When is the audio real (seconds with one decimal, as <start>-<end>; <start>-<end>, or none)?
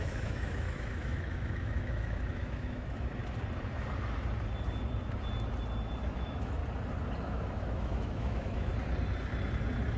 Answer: 3.2-6.0; 6.6-7.2; 8.7-10.0